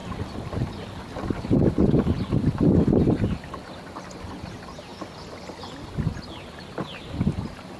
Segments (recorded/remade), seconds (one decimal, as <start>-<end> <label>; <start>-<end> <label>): 0.0-7.8 recorded